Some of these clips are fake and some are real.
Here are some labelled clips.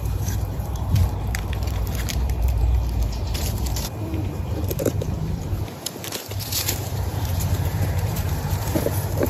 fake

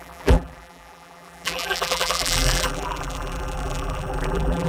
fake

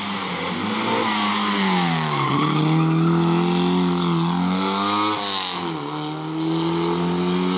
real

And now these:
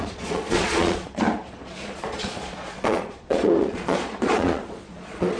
fake